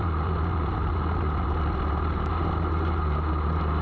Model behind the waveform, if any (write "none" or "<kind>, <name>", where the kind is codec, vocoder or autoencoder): none